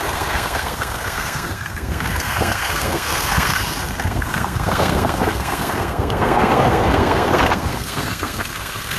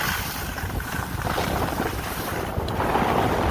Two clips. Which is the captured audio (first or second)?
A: second